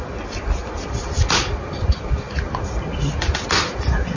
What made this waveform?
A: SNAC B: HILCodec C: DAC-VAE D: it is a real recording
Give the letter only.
D